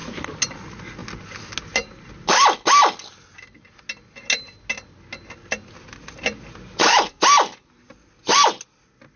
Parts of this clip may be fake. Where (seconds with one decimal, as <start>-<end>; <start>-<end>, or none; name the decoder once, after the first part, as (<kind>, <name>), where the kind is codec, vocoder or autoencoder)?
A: none

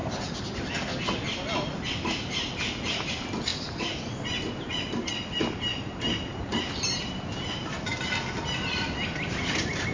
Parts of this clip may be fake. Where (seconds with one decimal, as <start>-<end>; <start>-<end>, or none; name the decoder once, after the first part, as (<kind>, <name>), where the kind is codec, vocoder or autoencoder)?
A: 3.5-4.1 (vocoder, BigVGAN v2); 6.5-8.9

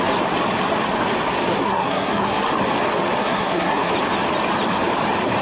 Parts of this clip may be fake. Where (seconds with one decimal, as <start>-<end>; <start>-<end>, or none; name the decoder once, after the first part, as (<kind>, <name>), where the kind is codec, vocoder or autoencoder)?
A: 1.6-2.4 (codec, SNAC); 3.2-3.9